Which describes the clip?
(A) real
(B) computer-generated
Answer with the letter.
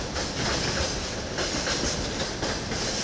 A